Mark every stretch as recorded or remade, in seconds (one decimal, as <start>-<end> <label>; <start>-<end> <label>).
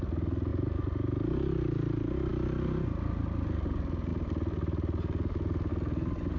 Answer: 0.0-6.4 recorded